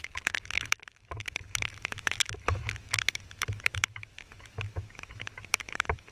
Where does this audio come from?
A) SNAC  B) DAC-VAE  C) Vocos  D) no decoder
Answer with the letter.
B